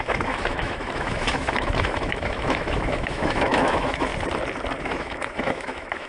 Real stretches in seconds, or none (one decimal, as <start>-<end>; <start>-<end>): 4.1-4.8